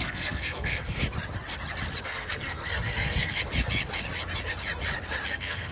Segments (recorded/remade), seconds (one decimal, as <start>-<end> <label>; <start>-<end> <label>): 0.0-1.0 remade; 1.0-2.0 recorded; 2.0-3.4 remade; 3.4-5.3 recorded; 5.3-5.7 remade